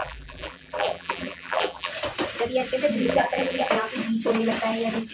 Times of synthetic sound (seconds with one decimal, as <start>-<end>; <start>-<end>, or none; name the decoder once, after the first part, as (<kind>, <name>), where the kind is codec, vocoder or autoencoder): 0.0-1.9 (vocoder, BigVGAN v2); 3.0-3.7